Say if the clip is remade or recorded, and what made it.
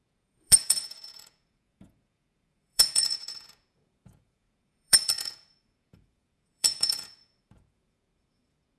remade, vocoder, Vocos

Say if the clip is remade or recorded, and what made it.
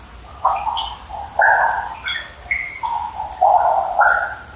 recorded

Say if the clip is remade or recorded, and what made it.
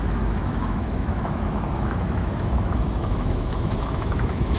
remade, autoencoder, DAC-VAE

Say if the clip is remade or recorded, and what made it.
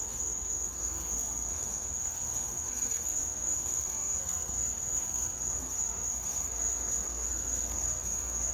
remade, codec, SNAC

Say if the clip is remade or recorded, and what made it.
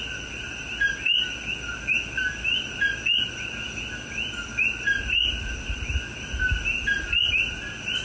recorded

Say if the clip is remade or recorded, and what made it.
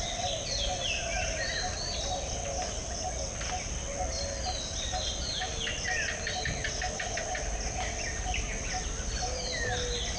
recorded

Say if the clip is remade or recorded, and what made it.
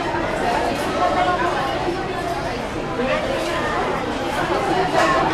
remade, vocoder, BigVGAN v2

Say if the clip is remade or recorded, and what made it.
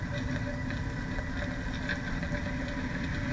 recorded